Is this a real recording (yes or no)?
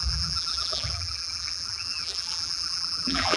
no